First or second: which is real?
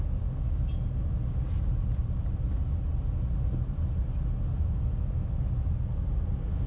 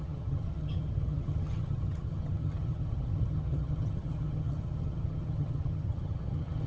first